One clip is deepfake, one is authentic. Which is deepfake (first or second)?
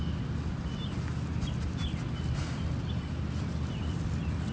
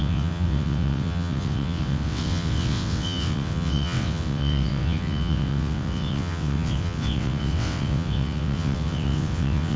second